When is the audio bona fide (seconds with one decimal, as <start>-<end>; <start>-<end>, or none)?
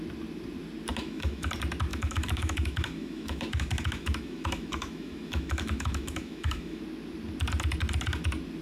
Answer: 0.0-0.9; 1.5-1.9; 6.8-8.6